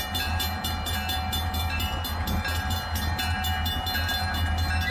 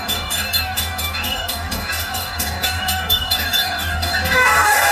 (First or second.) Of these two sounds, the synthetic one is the second